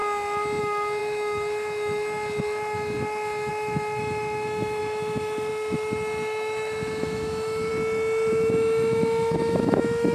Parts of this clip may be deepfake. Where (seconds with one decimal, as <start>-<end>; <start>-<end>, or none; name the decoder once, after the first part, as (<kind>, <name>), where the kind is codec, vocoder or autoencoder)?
0.6-7.7 (autoencoder, DAC-VAE); 8.3-10.1